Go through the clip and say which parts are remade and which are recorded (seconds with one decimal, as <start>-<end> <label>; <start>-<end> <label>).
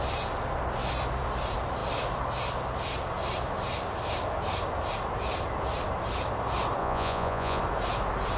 0.0-6.8 recorded; 6.8-7.6 remade; 7.6-8.4 recorded